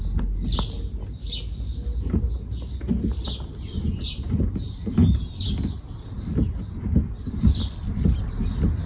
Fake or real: real